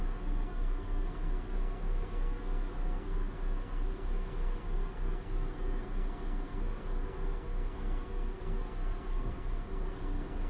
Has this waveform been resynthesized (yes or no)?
yes